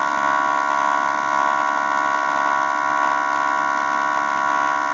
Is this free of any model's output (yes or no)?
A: yes